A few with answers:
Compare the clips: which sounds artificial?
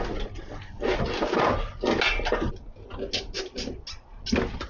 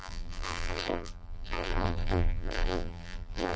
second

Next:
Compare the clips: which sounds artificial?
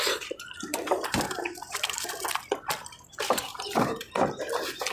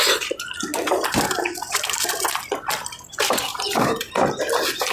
first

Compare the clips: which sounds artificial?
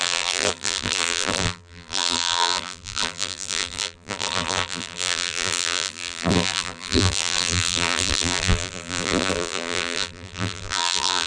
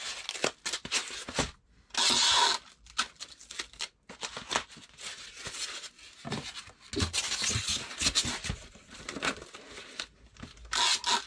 first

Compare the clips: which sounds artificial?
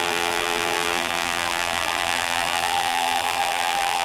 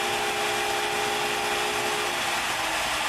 first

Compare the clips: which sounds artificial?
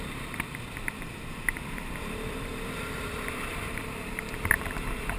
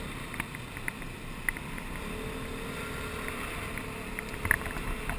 first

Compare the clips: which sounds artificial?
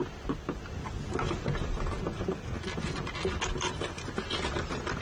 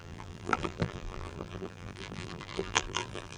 second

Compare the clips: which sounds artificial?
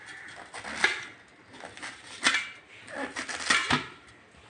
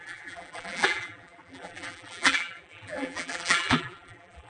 second